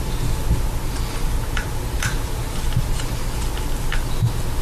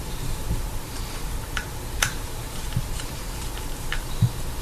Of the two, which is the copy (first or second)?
second